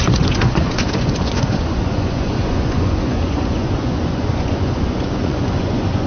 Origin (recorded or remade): remade